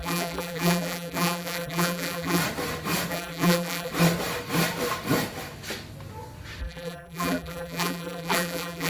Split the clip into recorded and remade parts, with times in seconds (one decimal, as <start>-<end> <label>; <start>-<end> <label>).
0.0-2.4 remade; 2.4-3.1 recorded; 3.1-3.9 remade; 3.9-6.6 recorded; 6.6-8.9 remade